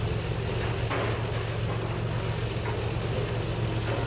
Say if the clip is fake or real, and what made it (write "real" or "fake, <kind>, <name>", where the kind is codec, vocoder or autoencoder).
real